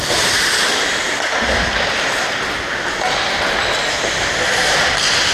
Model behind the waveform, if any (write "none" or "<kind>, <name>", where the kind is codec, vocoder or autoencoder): none